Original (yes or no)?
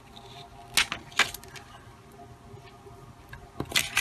yes